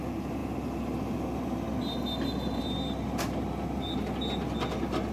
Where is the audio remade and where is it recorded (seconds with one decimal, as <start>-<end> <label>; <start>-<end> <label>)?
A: 0.0-5.1 recorded